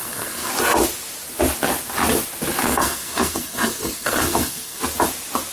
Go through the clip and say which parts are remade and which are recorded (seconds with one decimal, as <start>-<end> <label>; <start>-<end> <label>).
0.0-0.5 remade; 0.5-2.6 recorded; 2.6-4.8 remade; 4.8-5.5 recorded